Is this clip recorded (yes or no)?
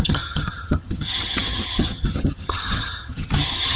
no